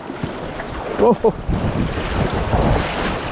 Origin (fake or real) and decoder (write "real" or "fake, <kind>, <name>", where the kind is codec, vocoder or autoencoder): real